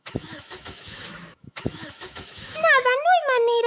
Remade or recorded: remade